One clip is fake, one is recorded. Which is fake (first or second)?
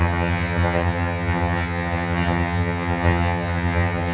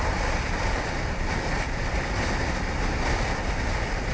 first